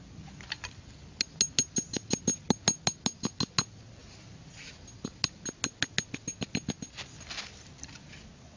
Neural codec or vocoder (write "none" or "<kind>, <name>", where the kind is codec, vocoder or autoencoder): none